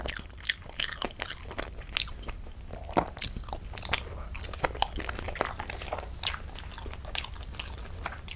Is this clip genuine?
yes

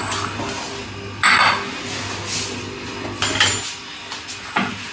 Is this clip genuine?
yes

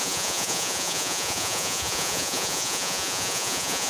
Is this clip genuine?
no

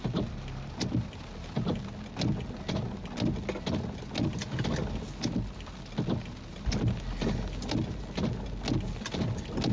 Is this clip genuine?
yes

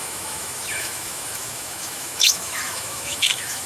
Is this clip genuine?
no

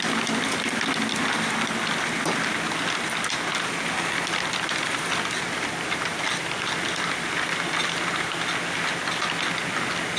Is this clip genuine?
yes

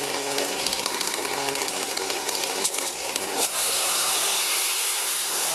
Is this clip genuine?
no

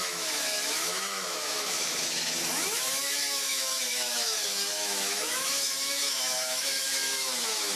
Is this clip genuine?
no